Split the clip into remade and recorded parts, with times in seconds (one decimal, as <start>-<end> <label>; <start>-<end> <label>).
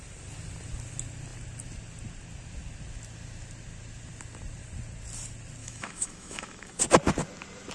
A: 0.0-5.6 recorded; 5.6-6.7 remade; 6.7-7.7 recorded